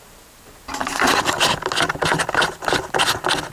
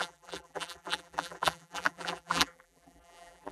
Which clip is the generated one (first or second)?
second